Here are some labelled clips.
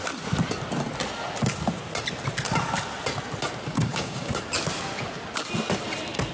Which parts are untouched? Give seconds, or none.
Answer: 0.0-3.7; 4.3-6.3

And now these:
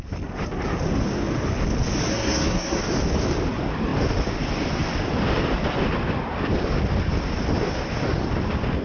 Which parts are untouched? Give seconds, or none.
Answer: 0.0-2.1; 2.8-8.8